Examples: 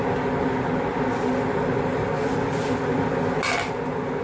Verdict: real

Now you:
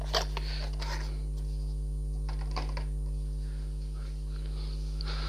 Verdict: real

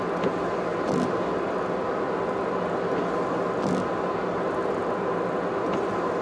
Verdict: real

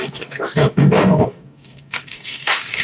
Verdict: fake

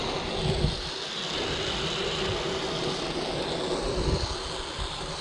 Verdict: real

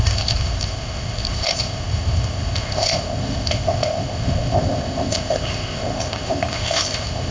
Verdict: fake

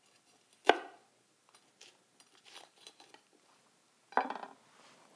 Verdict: real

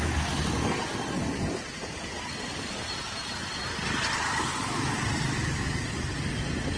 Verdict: real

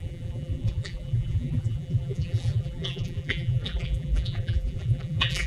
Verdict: fake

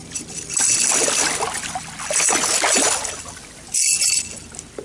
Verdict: real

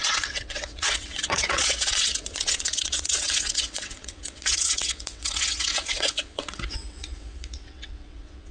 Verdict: fake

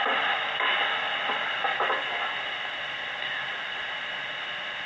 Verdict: real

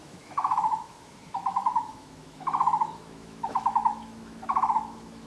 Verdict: fake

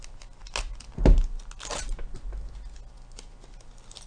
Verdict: real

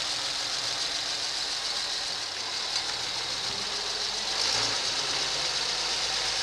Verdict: real